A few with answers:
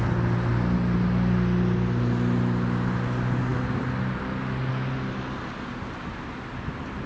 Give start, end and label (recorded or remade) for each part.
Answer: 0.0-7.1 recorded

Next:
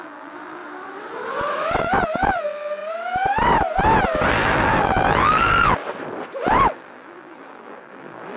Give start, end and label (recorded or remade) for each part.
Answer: 0.0-0.6 remade; 0.6-1.8 recorded; 1.8-2.8 remade; 2.8-4.3 recorded; 4.3-5.8 remade; 5.8-6.6 recorded; 6.6-8.4 remade

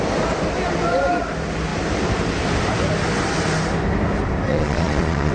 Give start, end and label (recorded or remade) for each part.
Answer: 0.0-4.5 recorded; 4.5-5.3 remade

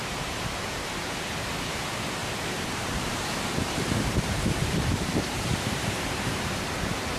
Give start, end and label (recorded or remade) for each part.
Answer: 0.0-0.5 remade; 0.5-2.2 recorded; 2.2-6.5 remade; 6.5-7.2 recorded

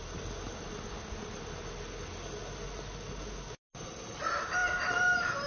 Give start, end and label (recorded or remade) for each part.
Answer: 0.0-4.6 recorded; 4.6-5.5 remade

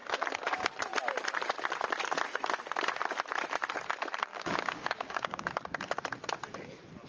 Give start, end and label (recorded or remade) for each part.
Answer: 0.0-4.3 recorded; 4.3-5.5 remade; 5.5-7.1 recorded

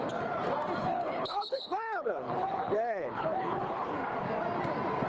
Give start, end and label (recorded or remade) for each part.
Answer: 0.0-0.8 recorded; 0.8-3.9 remade; 3.9-5.1 recorded